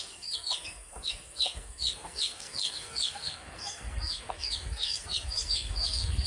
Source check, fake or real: fake